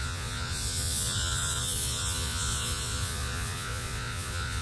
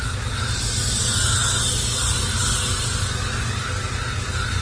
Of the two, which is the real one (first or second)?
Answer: second